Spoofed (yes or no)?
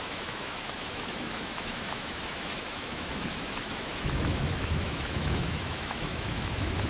yes